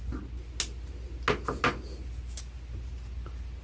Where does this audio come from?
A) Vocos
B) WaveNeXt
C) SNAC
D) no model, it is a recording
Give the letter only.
D